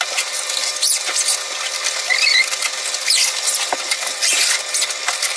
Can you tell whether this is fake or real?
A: real